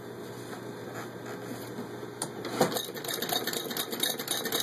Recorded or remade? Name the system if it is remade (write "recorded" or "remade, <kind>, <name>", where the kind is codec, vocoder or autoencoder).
recorded